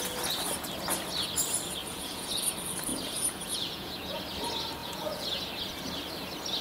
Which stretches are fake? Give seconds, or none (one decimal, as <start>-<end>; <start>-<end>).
1.8-2.3; 2.9-4.2; 4.8-5.4

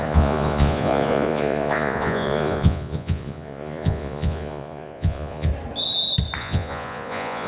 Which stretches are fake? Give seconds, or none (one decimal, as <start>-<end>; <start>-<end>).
0.0-5.5; 6.4-7.5

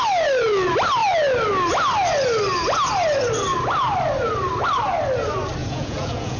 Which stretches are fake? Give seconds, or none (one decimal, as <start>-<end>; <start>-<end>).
5.6-6.4

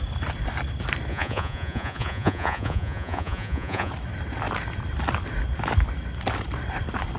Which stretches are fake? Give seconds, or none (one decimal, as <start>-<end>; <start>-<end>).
1.1-3.9